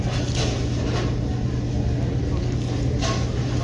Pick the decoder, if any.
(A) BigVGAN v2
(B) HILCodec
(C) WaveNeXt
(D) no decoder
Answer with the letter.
D